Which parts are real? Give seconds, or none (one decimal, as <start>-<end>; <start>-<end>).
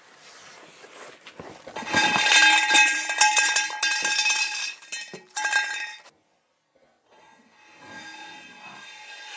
0.0-9.4